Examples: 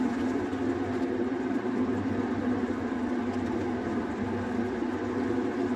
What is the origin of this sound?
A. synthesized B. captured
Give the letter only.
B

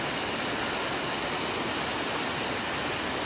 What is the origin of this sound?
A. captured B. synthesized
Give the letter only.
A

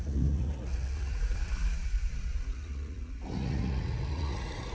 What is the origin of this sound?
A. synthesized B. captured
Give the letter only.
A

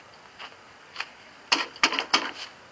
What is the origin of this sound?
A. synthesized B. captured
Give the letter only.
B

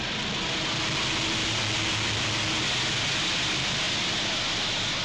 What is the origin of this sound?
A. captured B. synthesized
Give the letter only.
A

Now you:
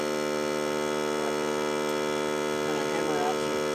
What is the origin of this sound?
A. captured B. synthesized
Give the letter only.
A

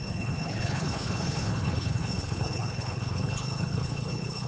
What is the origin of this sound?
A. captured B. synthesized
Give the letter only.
B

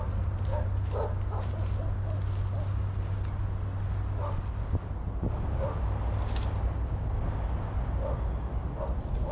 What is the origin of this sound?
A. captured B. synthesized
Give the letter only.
A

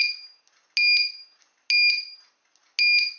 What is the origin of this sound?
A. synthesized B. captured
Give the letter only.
B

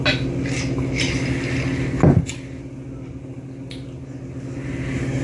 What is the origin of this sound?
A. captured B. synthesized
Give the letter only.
A